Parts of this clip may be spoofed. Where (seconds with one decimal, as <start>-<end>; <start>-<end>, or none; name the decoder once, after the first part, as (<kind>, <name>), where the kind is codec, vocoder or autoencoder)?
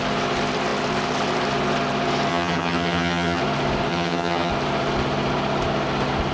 2.3-3.4 (vocoder, HiFi-GAN); 3.9-4.5